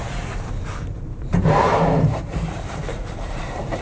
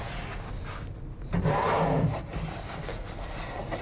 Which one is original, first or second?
second